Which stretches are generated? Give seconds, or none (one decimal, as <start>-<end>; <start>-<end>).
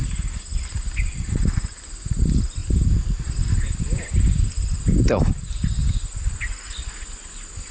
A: none